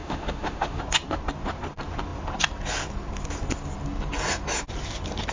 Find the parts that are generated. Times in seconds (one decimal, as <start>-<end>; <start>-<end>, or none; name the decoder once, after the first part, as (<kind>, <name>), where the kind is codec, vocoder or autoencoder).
0.0-0.8 (autoencoder, DAC-VAE)